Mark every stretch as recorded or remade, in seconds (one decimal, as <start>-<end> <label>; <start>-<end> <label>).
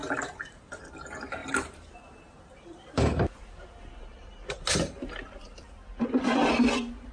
0.0-0.8 remade; 0.8-1.4 recorded; 1.4-4.5 remade; 4.5-7.1 recorded